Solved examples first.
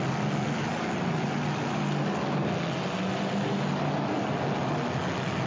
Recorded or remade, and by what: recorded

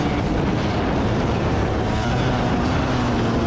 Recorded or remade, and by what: recorded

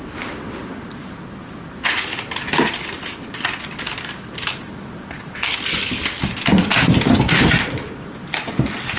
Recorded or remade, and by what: recorded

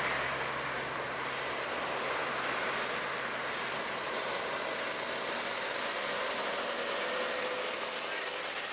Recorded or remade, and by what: recorded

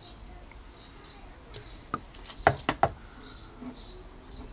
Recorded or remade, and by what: recorded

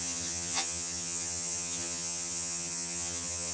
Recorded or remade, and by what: remade, vocoder, HiFi-GAN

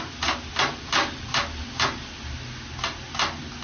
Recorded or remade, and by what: recorded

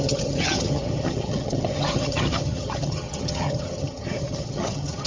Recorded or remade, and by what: remade, vocoder, HiFi-GAN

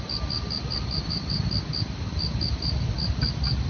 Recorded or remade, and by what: recorded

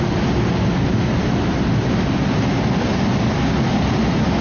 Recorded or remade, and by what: recorded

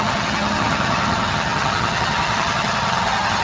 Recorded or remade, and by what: remade, vocoder, HiFi-GAN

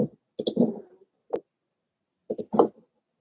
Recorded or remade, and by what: recorded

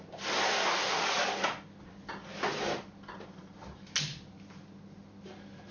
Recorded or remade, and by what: recorded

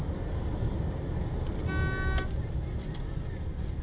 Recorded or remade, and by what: recorded